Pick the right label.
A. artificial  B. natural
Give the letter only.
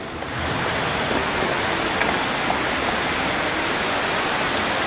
B